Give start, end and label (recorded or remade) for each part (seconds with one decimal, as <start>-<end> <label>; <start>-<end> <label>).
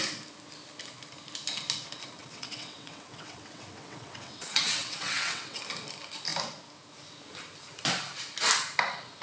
0.0-2.2 recorded; 2.2-5.6 remade; 5.6-9.2 recorded